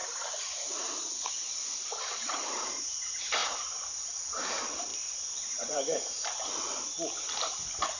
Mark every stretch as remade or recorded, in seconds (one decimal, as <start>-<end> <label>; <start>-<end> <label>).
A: 0.0-2.8 remade; 2.8-3.4 recorded; 3.4-4.5 remade; 4.5-4.9 recorded; 4.9-6.5 remade; 6.5-8.0 recorded